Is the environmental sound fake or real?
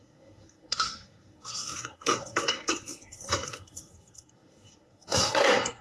fake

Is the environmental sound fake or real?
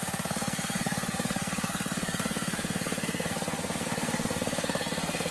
fake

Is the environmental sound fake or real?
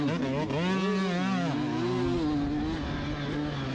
real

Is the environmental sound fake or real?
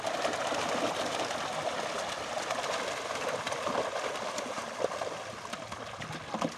real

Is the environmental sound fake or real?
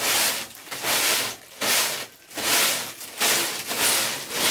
real